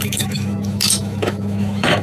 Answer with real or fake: fake